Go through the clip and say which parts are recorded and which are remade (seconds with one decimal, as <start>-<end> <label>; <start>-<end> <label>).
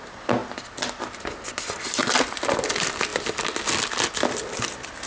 0.0-5.1 recorded